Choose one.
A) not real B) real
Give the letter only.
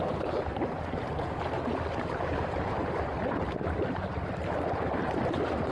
B